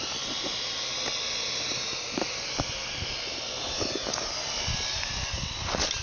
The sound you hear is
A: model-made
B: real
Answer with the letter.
B